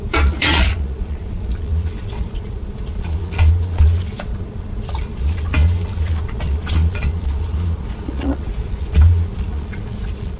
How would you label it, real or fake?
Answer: fake